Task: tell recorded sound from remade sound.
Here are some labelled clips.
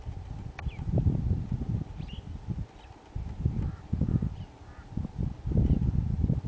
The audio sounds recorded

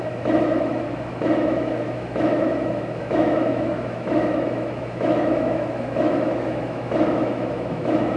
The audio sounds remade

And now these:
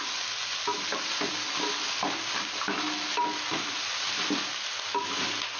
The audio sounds recorded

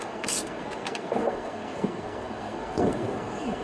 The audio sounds remade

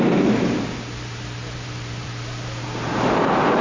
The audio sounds remade